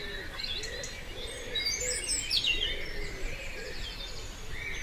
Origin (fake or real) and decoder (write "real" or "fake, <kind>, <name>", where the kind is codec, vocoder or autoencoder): real